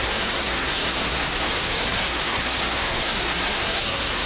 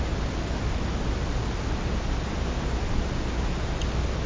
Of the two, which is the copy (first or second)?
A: first